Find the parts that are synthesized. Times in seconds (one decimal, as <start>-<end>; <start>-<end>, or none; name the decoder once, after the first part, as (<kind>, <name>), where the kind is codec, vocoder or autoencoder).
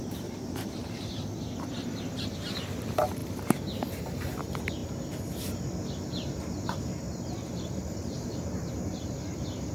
0.0-4.8 (vocoder, BigVGAN v2); 7.5-9.7